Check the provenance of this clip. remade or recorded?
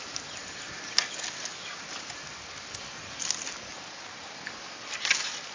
recorded